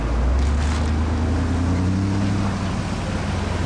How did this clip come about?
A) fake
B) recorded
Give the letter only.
B